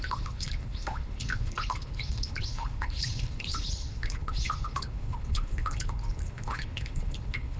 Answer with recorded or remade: remade